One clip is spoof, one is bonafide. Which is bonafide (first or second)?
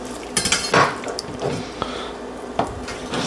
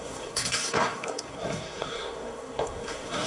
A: first